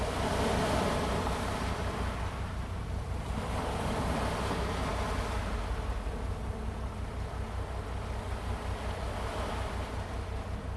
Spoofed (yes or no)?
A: no